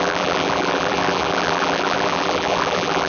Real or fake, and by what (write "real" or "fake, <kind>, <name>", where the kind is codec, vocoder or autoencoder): fake, vocoder, BigVGAN v2